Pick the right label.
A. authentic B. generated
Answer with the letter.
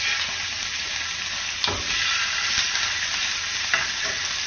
A